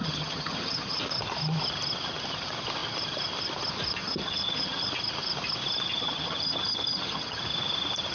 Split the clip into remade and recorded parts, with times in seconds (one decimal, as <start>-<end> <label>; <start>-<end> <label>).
0.0-1.0 remade; 1.0-4.0 recorded; 4.0-4.9 remade; 4.9-6.0 recorded; 6.0-7.4 remade; 7.4-8.1 recorded